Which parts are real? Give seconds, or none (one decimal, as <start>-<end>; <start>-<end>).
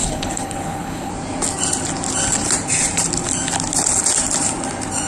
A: 1.1-5.1